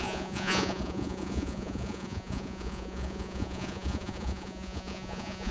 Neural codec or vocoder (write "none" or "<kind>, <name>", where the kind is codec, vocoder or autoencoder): vocoder, Vocos